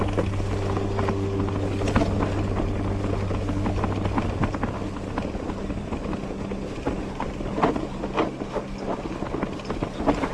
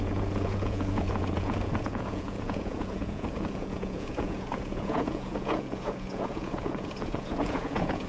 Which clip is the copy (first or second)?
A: second